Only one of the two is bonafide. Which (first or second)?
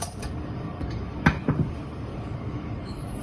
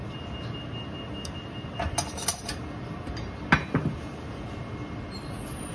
second